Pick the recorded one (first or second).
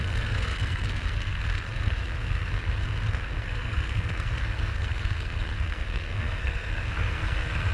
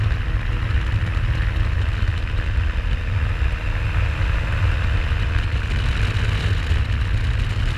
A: second